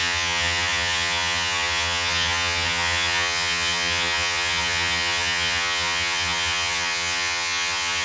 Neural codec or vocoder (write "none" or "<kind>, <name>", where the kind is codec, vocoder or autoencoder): vocoder, HiFi-GAN